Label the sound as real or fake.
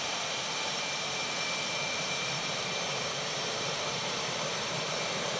fake